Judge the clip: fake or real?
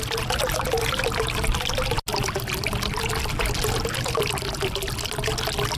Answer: real